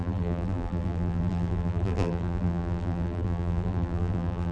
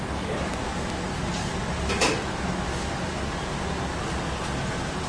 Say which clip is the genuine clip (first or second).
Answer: second